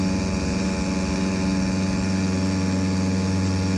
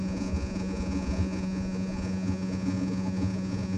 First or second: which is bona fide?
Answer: first